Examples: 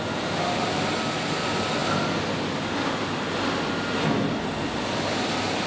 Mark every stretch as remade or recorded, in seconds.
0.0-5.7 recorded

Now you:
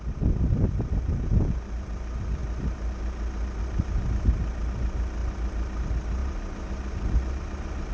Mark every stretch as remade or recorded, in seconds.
0.0-7.9 recorded

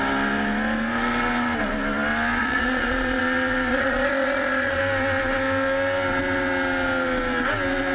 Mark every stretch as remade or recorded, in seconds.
0.0-2.4 recorded; 2.4-3.2 remade; 3.2-3.7 recorded; 3.7-4.8 remade; 4.8-7.9 recorded

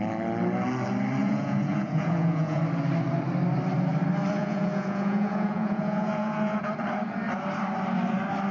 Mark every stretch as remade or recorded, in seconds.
0.0-1.2 recorded; 1.2-2.6 remade; 2.6-4.4 recorded; 4.4-6.7 remade; 6.7-8.5 recorded

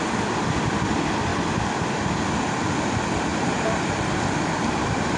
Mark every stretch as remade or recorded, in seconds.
0.0-3.3 recorded; 3.3-5.2 remade